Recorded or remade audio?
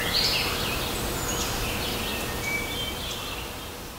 recorded